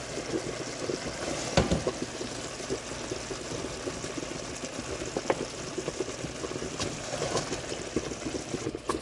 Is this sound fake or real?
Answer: real